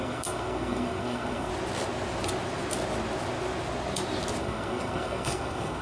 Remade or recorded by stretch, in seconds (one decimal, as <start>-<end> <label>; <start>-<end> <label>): 0.0-1.5 remade; 1.5-4.4 recorded; 4.4-5.8 remade